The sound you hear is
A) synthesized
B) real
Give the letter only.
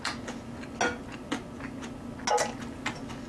B